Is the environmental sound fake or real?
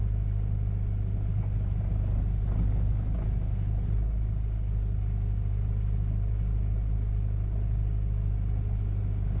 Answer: real